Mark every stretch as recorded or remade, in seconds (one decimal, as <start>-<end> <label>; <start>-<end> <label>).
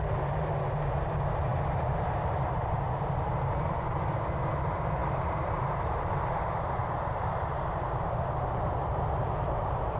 0.0-10.0 remade